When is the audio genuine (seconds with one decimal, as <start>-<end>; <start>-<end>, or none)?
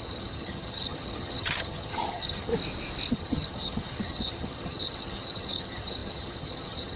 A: 2.5-3.1